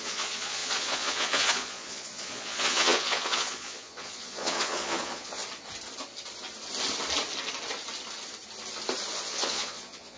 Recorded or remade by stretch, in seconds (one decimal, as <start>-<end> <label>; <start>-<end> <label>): 0.0-5.4 remade; 5.4-9.1 recorded; 9.1-10.2 remade